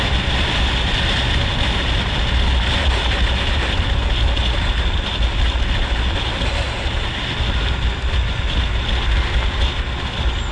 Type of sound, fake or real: real